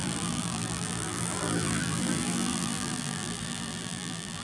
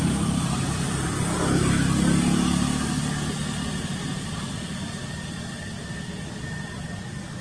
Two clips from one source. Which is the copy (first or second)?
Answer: first